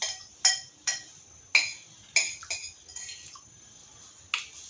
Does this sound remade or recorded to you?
recorded